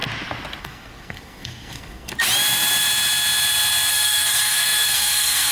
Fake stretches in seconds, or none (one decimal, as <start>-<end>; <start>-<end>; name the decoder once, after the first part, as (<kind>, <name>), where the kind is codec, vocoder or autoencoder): 0.6-2.1 (codec, SNAC); 3.9-5.5